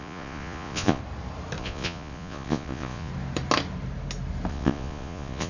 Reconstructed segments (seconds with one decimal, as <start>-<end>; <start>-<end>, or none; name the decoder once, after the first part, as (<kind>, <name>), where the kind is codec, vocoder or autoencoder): 0.0-1.0 (vocoder, Vocos); 1.6-3.1; 4.5-5.5